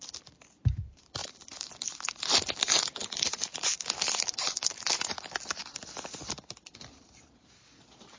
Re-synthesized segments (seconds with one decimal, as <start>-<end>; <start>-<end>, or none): 1.2-5.7